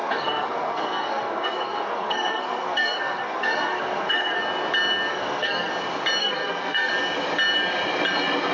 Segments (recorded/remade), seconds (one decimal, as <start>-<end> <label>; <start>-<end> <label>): 0.0-4.4 remade; 4.4-5.1 recorded; 5.1-5.7 remade; 5.7-6.2 recorded; 6.2-6.9 remade; 6.9-8.5 recorded